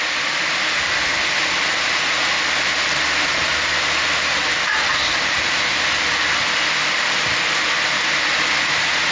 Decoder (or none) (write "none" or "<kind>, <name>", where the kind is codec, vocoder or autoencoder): none